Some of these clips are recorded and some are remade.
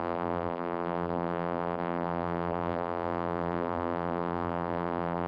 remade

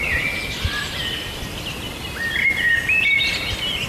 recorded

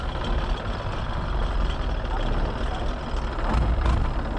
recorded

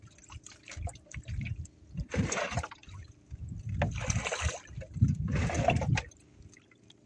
recorded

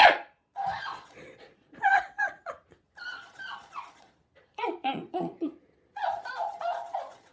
remade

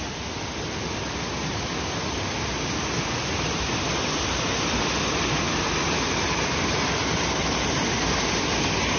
recorded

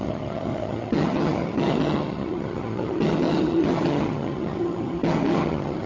remade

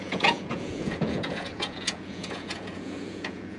remade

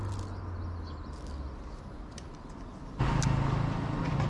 recorded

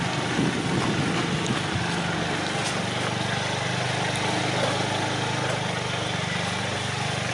recorded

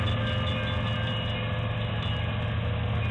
recorded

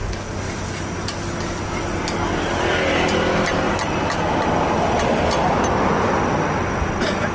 recorded